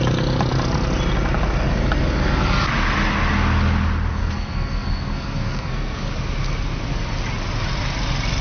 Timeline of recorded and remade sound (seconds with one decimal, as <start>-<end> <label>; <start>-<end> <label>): 0.0-4.2 recorded; 4.2-6.1 remade; 6.1-8.4 recorded

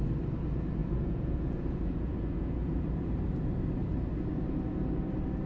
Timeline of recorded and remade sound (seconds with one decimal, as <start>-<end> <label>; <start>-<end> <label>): 0.0-0.8 recorded; 0.8-2.8 remade; 2.8-5.5 recorded